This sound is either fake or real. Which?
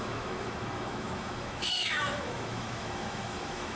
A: fake